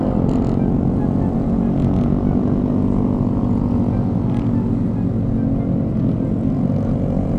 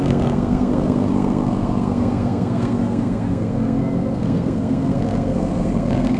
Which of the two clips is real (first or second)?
first